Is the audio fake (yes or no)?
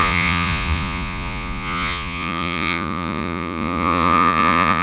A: yes